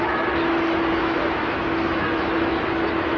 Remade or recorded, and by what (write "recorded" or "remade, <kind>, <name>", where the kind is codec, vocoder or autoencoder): remade, autoencoder, DAC-VAE